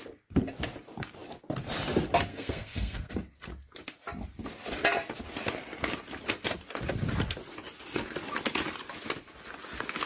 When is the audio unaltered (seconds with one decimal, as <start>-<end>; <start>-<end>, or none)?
0.0-2.3; 3.1-10.1